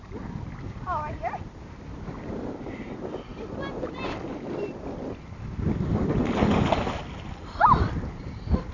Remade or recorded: recorded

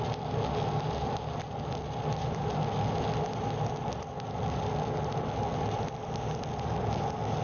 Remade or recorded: recorded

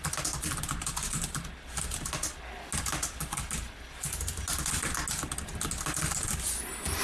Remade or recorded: recorded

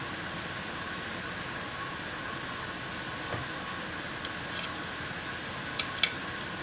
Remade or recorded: recorded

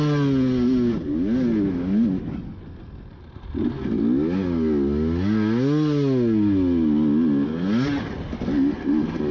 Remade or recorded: recorded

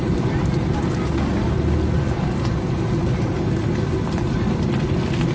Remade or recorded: recorded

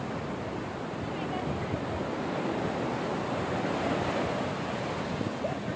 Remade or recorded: recorded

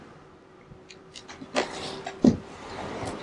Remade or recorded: remade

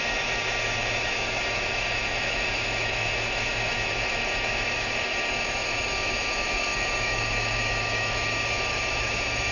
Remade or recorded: remade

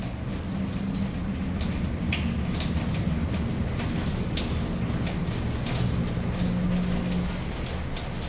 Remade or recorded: recorded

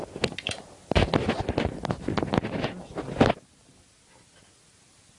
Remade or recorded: recorded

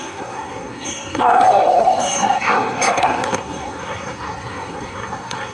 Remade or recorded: remade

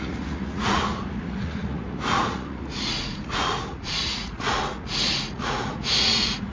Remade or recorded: remade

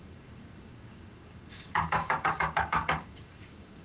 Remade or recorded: remade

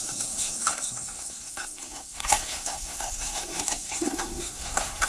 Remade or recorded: remade